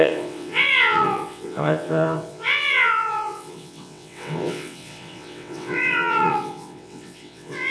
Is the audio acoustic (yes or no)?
no